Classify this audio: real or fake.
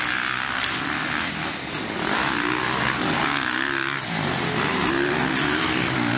real